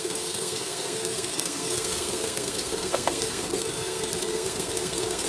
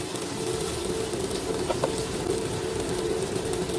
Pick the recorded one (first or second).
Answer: second